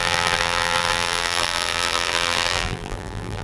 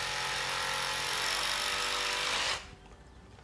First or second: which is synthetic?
first